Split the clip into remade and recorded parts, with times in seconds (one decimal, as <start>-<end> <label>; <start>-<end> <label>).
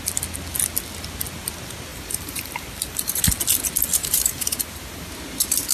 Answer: 0.0-1.9 recorded; 1.9-3.2 remade; 3.2-4.0 recorded; 4.0-5.1 remade; 5.1-5.7 recorded